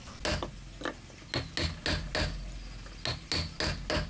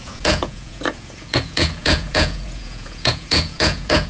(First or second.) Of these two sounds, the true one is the first